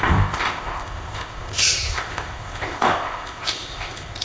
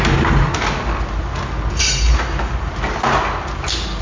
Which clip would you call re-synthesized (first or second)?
first